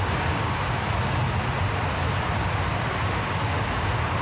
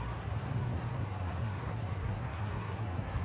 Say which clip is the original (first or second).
first